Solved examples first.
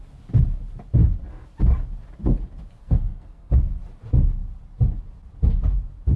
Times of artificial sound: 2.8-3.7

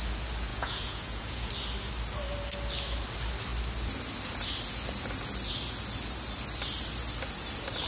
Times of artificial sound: 0.5-1.5

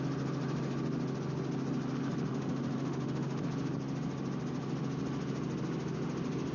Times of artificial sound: 2.3-3.4

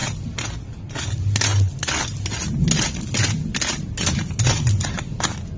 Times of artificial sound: none